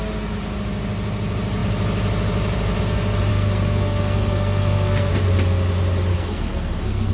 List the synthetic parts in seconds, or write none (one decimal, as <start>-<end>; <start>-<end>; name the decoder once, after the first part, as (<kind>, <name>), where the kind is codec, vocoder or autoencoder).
3.3-5.1 (codec, SNAC); 6.1-7.1